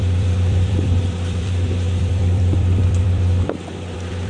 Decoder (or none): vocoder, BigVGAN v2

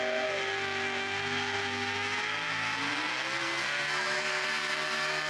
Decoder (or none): codec, SNAC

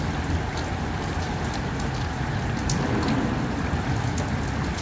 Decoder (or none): none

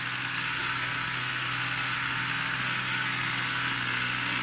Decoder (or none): codec, SNAC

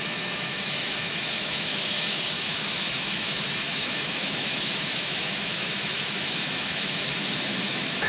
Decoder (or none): autoencoder, DAC-VAE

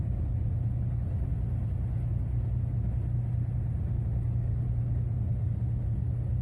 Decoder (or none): none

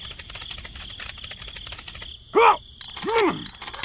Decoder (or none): none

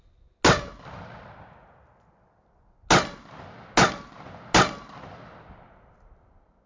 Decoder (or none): none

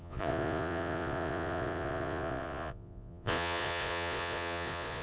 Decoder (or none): vocoder, Vocos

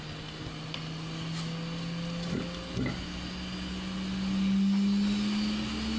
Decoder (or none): none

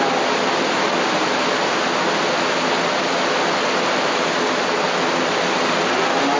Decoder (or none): none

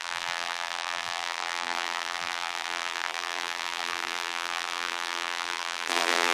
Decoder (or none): vocoder, BigVGAN v2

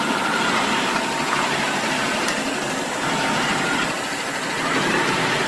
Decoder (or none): vocoder, BigVGAN v2